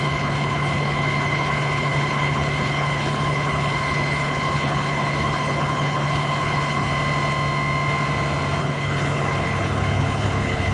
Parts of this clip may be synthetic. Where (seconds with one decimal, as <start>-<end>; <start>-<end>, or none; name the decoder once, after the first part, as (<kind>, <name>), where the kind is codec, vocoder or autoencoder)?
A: 0.0-6.9 (codec, HILCodec); 8.6-10.7